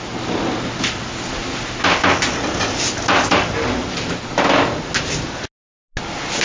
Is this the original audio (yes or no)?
yes